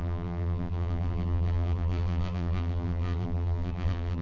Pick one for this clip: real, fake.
fake